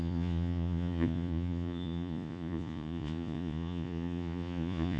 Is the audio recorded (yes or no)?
no